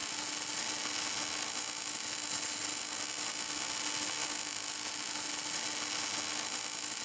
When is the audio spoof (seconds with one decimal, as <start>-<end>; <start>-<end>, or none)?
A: none